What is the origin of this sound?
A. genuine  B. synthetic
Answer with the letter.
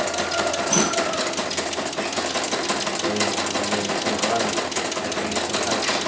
A